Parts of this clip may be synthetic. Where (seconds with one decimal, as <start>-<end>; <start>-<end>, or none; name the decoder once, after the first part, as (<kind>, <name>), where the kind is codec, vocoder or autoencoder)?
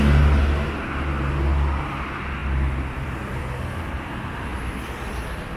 2.4-4.1 (vocoder, BigVGAN v2); 4.5-5.0